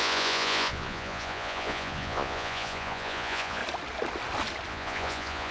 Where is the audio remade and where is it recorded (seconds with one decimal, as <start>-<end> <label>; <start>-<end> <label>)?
0.0-3.6 remade; 3.6-4.7 recorded; 4.7-5.5 remade